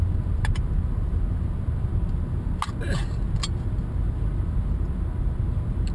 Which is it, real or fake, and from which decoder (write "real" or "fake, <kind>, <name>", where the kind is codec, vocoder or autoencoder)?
real